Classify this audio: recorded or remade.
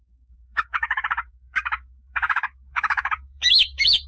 remade